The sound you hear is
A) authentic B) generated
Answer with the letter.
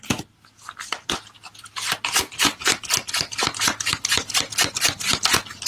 A